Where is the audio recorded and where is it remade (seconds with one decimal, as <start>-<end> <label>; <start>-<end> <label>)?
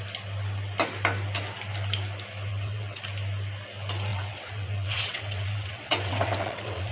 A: 0.0-2.5 recorded; 2.5-3.0 remade; 3.0-4.1 recorded; 4.1-6.9 remade